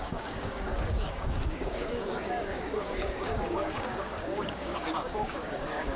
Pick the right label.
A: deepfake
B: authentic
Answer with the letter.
A